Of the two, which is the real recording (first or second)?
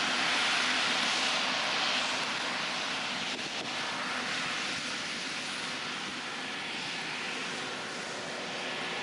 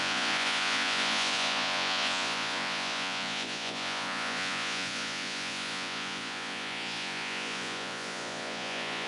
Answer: first